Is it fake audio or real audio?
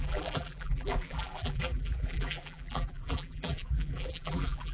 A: fake